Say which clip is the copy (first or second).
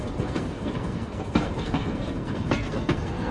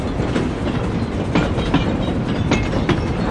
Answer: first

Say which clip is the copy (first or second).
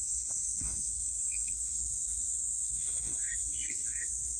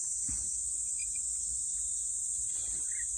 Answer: first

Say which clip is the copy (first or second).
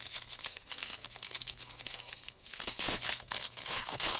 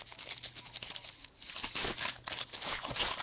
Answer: first